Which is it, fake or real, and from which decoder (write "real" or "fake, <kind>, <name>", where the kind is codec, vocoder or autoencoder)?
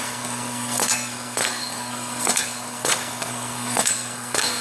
fake, codec, SNAC